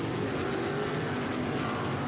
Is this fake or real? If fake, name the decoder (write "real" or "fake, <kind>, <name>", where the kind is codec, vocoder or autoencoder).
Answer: real